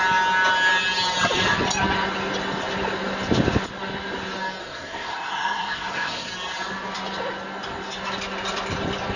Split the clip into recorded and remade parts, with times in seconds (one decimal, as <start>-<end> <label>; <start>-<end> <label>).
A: 0.0-4.6 recorded; 4.6-6.3 remade; 6.3-9.2 recorded